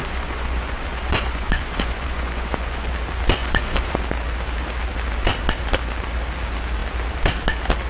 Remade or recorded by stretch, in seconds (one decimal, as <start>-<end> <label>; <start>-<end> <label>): 0.0-2.9 remade; 2.9-3.4 recorded; 3.4-4.0 remade; 4.0-7.9 recorded